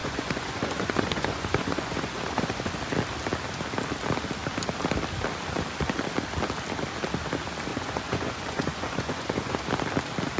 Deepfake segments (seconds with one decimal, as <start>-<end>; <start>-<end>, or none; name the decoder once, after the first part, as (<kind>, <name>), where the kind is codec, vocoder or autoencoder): 0.0-2.7 (vocoder, Vocos); 7.7-9.6